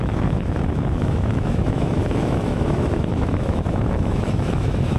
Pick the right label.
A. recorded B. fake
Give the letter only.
B